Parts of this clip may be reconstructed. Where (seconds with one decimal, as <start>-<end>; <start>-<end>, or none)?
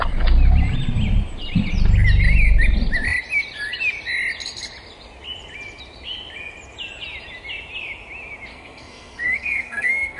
8.5-10.2